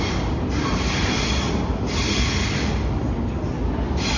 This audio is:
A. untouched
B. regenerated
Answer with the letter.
A